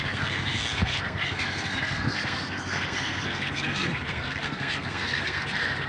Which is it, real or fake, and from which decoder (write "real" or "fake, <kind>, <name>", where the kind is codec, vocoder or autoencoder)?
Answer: fake, codec, SNAC